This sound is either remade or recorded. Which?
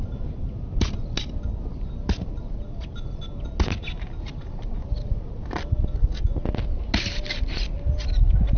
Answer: recorded